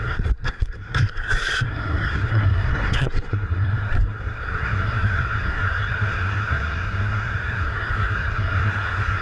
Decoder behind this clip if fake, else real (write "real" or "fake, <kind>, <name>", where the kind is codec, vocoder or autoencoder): fake, codec, SNAC